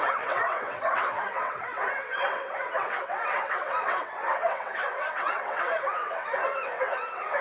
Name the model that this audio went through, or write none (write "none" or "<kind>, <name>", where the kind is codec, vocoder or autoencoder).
vocoder, WaveNeXt